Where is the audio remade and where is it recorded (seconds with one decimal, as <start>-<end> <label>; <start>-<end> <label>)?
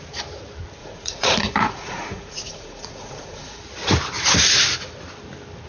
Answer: 0.0-0.8 recorded; 0.8-3.6 remade; 3.6-5.7 recorded